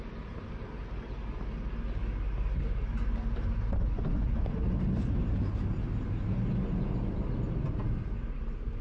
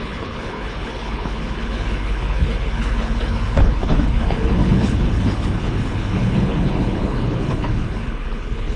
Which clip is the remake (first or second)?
second